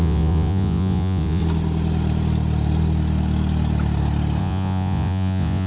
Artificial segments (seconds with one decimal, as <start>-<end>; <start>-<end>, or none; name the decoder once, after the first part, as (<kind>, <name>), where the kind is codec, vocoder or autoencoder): 0.0-1.4 (vocoder, Vocos); 4.4-5.7